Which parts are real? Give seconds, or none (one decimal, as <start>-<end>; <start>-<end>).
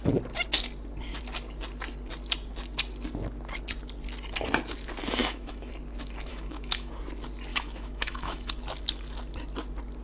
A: 0.0-5.2; 5.7-6.3; 6.9-7.5; 8.5-10.0